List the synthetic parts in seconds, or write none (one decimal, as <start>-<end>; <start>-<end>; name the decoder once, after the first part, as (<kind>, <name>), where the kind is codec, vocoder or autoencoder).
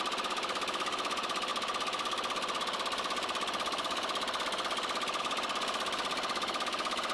none